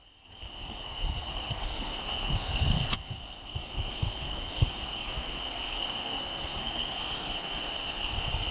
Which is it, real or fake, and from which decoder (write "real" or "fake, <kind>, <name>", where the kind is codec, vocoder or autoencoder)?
fake, codec, SNAC